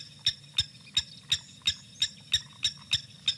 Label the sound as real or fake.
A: real